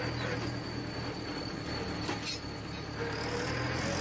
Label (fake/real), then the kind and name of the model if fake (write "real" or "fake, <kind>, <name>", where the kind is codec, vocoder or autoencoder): real